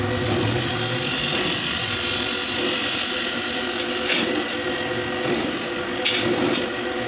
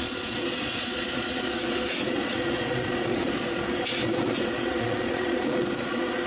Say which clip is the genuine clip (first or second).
first